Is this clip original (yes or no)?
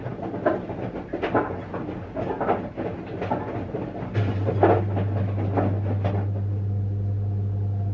yes